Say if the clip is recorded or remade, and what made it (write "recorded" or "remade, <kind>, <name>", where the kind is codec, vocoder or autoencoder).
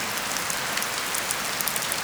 recorded